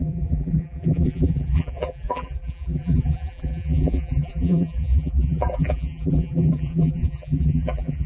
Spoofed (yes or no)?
yes